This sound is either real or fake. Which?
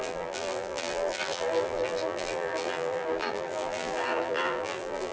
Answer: fake